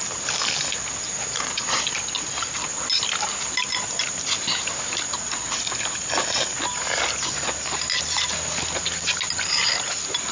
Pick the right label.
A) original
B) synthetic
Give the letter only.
A